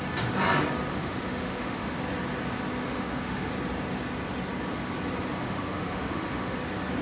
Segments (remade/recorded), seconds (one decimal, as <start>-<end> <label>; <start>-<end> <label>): 0.0-0.9 recorded; 0.9-1.9 remade; 1.9-2.8 recorded; 2.8-3.5 remade; 3.5-5.4 recorded; 5.4-6.6 remade; 6.6-7.0 recorded